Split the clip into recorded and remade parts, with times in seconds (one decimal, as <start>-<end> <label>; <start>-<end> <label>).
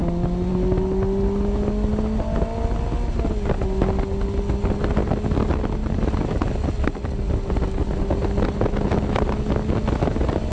0.0-10.5 recorded